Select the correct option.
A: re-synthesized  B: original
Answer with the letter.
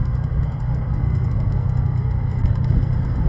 A